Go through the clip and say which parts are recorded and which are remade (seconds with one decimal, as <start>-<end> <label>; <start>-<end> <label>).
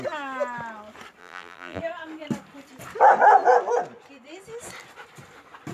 0.0-1.2 recorded; 1.2-1.8 remade; 1.8-5.7 recorded